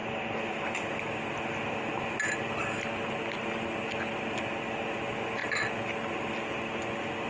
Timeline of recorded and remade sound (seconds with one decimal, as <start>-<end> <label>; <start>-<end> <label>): 0.0-7.3 recorded